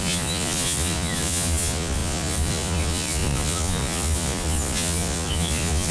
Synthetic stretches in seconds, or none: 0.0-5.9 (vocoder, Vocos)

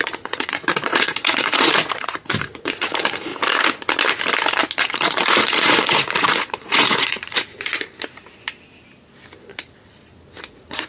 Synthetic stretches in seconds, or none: 0.0-3.3 (vocoder, Vocos); 4.8-7.7; 10.4-10.9

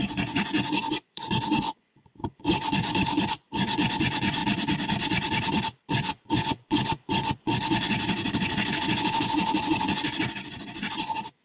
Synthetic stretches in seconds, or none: 0.0-4.4 (vocoder, Vocos); 5.9-11.4

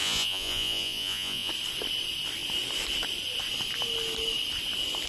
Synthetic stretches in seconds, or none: 0.0-1.5 (vocoder, Vocos)